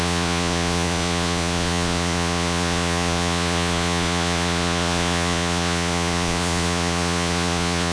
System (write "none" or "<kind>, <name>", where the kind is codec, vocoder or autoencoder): vocoder, Vocos